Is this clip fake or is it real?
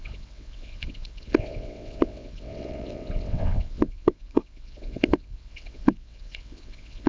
fake